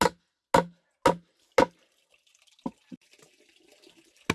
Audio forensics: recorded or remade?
recorded